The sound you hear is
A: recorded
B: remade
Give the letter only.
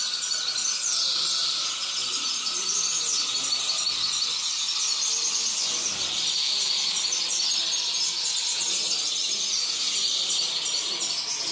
A